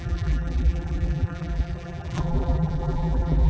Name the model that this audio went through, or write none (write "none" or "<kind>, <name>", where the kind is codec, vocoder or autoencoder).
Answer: vocoder, BigVGAN v2